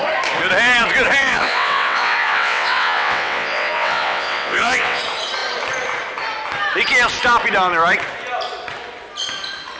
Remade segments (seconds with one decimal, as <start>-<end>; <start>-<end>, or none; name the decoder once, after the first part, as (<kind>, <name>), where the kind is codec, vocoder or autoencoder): 1.2-5.0 (vocoder, WaveNeXt)